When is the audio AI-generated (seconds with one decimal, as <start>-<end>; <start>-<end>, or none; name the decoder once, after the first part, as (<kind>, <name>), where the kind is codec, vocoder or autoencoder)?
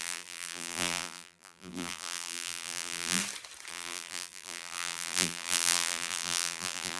0.0-3.2 (vocoder, BigVGAN v2); 3.7-7.0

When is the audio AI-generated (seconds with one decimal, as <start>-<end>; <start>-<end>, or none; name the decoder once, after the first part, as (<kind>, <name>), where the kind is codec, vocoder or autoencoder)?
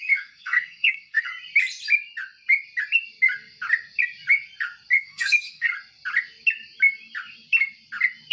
0.0-1.3 (codec, SNAC); 5.0-5.7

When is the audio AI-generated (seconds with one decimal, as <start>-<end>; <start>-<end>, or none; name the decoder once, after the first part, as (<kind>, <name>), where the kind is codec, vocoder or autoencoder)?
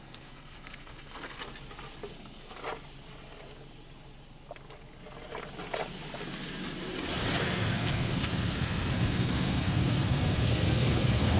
0.0-1.4 (codec, SNAC); 2.1-2.6; 7.3-11.4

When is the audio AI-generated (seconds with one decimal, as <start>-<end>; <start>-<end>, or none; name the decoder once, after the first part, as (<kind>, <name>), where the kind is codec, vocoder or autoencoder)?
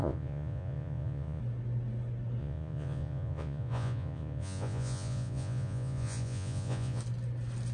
0.0-1.4 (vocoder, Vocos); 2.4-7.0